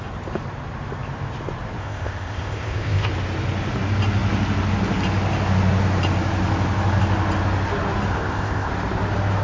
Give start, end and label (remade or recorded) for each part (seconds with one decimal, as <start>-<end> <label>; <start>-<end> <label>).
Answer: 0.0-1.8 recorded; 1.8-3.1 remade; 3.1-8.1 recorded; 8.1-8.7 remade; 8.7-9.4 recorded